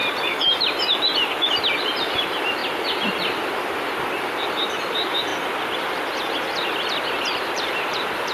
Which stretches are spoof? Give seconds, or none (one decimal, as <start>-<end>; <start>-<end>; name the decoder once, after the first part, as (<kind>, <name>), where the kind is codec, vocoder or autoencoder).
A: 0.0-2.6 (vocoder, BigVGAN v2); 4.2-5.3; 7.5-8.3